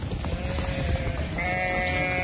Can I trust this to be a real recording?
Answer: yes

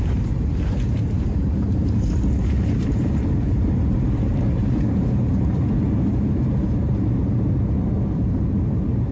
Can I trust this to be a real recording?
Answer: no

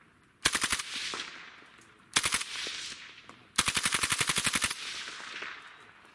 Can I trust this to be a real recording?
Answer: yes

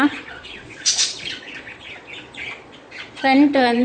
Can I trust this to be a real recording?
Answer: no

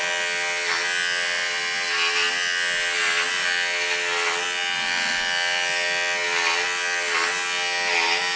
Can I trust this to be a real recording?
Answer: yes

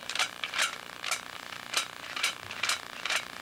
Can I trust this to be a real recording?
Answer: no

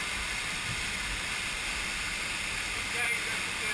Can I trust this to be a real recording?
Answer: yes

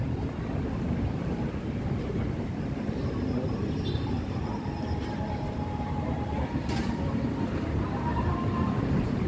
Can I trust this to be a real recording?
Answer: no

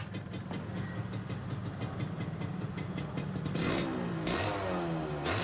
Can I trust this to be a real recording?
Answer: yes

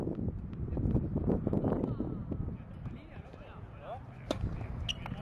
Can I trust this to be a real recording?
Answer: yes